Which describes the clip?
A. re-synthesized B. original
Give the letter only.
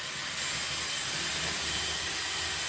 B